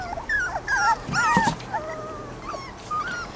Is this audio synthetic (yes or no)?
no